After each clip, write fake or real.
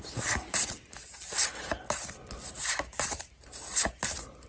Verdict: real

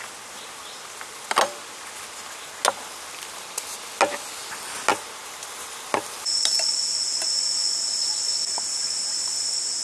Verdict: real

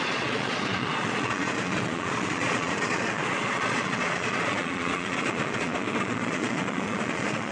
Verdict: fake